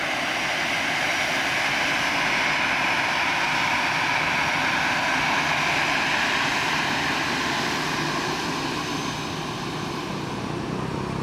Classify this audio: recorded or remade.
recorded